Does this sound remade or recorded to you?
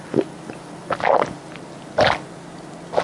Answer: recorded